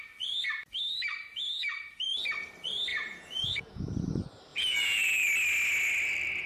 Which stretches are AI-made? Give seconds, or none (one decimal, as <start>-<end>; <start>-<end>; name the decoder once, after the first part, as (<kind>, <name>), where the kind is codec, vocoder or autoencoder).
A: 2.9-3.8 (vocoder, Vocos); 4.5-5.3

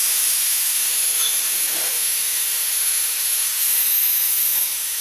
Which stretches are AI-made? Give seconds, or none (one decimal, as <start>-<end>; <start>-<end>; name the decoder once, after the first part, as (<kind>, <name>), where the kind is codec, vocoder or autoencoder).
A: 0.0-5.0 (autoencoder, DAC-VAE)

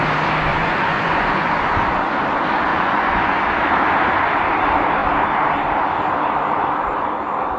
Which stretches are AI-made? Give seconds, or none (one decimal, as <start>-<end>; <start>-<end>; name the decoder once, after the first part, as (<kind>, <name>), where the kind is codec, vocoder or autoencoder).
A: 0.5-1.6 (vocoder, Vocos); 2.7-3.4

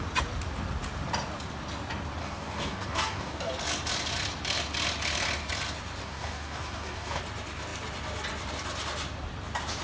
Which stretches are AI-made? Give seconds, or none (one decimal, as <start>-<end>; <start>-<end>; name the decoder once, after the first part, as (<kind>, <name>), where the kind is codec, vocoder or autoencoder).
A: 2.2-3.5 (codec, DAC); 6.0-7.2

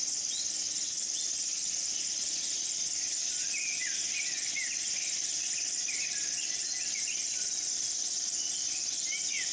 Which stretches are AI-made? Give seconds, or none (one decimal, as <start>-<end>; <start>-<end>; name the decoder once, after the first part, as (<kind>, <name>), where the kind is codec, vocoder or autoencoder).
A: none

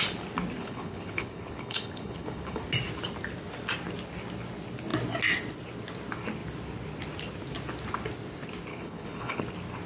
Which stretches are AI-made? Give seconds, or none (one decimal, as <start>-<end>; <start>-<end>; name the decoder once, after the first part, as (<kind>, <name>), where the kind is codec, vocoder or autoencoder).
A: 0.6-2.6 (codec, HILCodec); 8.7-9.4

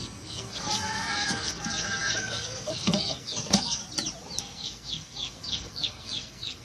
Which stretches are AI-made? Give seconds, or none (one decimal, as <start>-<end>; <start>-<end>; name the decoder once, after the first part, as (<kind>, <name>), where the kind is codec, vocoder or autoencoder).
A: 0.0-3.8 (codec, SNAC); 4.4-6.6

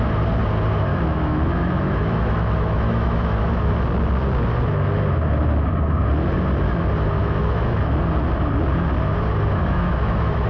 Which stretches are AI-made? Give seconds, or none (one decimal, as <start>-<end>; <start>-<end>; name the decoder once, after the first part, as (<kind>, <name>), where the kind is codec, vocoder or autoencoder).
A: 0.9-3.7 (autoencoder, DAC-VAE); 7.2-7.9; 9.6-10.5